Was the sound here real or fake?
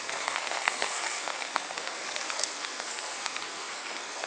fake